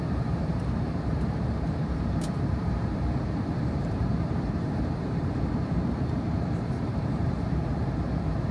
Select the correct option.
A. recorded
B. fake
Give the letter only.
B